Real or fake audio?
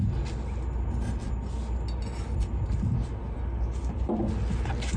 real